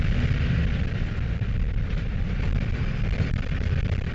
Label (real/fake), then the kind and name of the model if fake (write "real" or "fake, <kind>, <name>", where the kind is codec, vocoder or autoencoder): fake, vocoder, BigVGAN v2